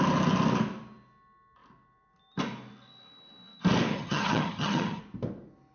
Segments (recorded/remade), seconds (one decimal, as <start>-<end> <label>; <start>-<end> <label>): 0.0-3.9 recorded; 3.9-5.0 remade; 5.0-5.7 recorded